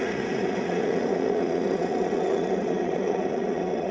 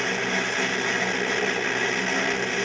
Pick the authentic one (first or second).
second